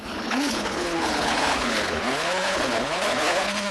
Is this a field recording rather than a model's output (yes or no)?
no